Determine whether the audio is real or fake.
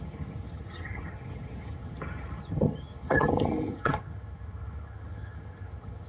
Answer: fake